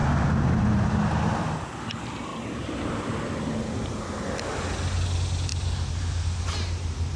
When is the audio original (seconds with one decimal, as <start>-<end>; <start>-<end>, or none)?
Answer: 0.0-7.2